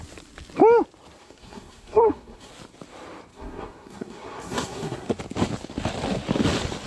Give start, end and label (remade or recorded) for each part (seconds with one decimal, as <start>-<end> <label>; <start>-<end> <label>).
0.0-1.2 recorded; 1.2-2.5 remade; 2.5-3.3 recorded; 3.3-5.2 remade; 5.2-6.9 recorded